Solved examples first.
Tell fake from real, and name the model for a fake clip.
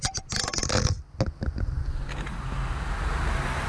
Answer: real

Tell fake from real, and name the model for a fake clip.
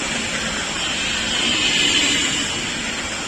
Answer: fake, vocoder, BigVGAN v2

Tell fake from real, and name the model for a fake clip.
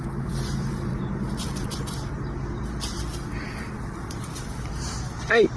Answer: fake, vocoder, BigVGAN v2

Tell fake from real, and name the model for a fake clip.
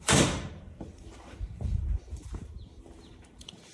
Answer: fake, vocoder, BigVGAN v2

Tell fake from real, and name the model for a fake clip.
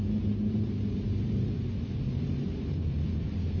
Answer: fake, vocoder, BigVGAN v2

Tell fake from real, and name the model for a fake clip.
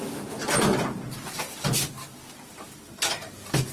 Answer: fake, vocoder, BigVGAN v2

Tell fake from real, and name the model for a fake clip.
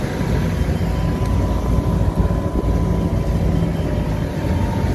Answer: real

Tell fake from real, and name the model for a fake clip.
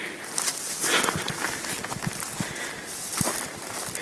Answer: real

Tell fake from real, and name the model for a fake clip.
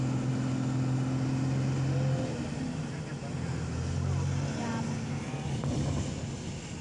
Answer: real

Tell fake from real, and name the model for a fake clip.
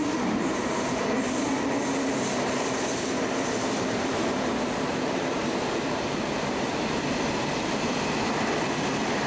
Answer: fake, vocoder, BigVGAN v2